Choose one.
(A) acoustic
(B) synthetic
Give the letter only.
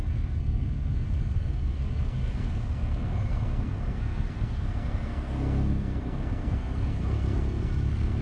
B